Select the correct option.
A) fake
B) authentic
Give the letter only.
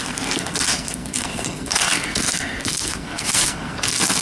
A